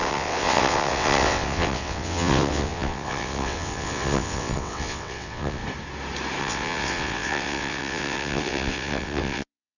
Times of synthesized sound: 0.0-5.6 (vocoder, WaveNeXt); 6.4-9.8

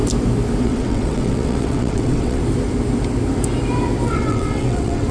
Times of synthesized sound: 0.6-2.4 (vocoder, WaveNeXt); 4.1-5.1

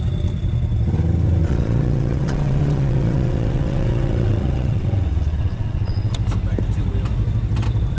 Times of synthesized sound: 1.4-6.2 (vocoder, WaveNeXt)